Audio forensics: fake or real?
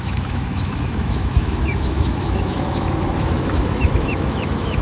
fake